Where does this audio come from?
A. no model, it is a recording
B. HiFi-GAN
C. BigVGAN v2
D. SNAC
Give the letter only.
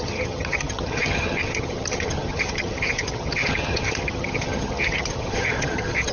B